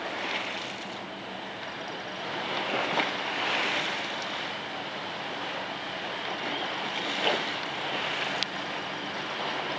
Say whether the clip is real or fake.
real